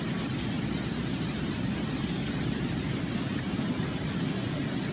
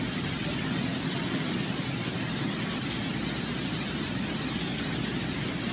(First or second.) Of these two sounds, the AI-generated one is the first